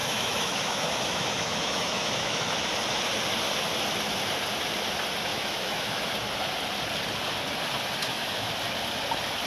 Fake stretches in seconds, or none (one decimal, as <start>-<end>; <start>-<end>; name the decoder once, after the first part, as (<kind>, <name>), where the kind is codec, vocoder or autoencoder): 0.0-2.7 (autoencoder, DAC-VAE); 5.3-6.0; 8.0-8.5